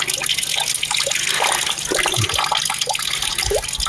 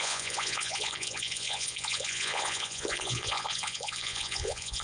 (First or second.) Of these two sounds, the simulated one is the second